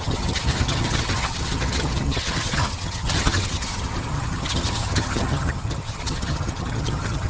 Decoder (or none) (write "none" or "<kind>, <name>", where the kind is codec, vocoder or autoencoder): vocoder, HiFi-GAN